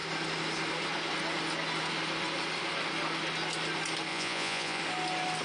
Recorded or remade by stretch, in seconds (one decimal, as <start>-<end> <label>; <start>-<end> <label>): 0.0-4.1 recorded; 4.1-4.8 remade; 4.8-5.4 recorded